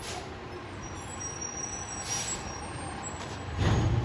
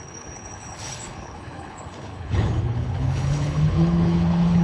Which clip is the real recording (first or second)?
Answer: first